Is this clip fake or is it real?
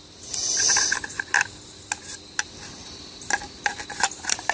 real